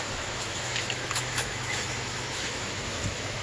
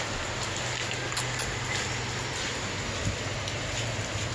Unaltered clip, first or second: second